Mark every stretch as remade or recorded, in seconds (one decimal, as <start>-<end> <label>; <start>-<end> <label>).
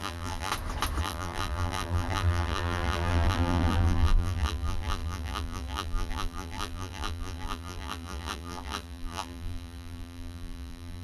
0.0-0.5 remade; 0.5-1.0 recorded; 1.0-11.0 remade